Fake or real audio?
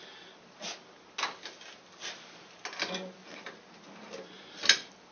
real